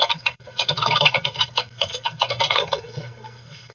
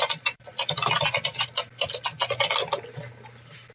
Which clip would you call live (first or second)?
second